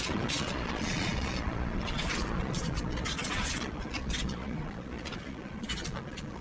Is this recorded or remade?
remade